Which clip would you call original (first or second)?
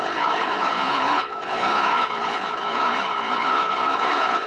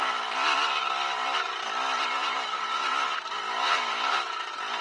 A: second